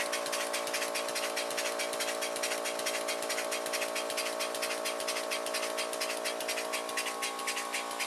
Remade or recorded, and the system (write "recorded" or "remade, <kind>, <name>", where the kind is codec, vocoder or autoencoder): recorded